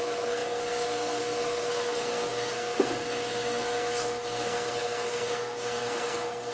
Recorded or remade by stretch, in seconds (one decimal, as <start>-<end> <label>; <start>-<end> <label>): 0.0-6.5 remade